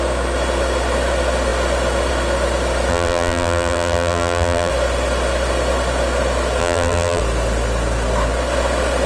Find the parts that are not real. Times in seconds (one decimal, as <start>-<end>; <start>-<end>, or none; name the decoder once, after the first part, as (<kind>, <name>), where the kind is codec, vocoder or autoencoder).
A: 2.9-4.7 (vocoder, BigVGAN v2); 6.6-7.2